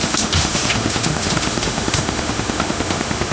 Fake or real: fake